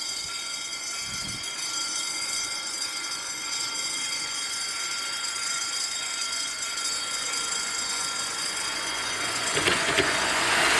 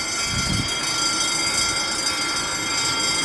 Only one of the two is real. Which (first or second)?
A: second